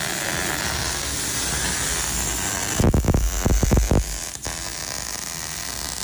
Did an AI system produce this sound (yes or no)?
no